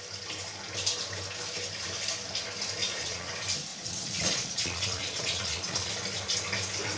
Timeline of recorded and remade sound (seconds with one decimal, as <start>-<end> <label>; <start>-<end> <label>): 0.0-2.8 recorded; 2.8-3.3 remade; 3.3-3.7 recorded; 3.7-5.9 remade; 5.9-7.0 recorded